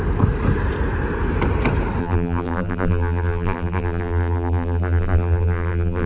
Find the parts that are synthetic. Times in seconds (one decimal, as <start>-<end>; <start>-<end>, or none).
2.0-6.1